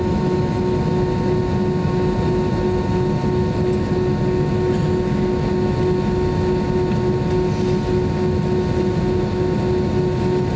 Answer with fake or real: real